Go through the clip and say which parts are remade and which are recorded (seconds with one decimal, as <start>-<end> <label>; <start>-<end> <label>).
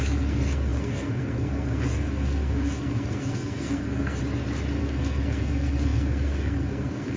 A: 0.0-4.2 remade; 4.2-4.8 recorded; 4.8-7.2 remade